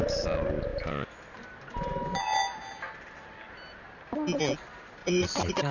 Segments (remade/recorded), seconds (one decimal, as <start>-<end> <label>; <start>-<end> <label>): 0.0-5.0 recorded; 5.0-5.7 remade